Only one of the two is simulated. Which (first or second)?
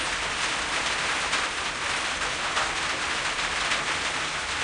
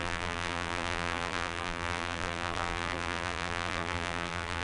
second